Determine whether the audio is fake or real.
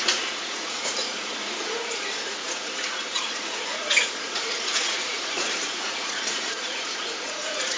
fake